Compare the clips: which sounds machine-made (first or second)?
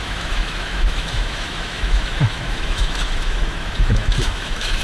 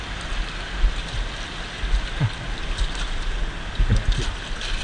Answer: first